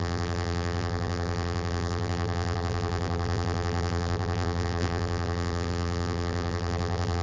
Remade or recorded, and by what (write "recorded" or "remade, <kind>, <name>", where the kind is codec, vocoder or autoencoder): remade, vocoder, BigVGAN v2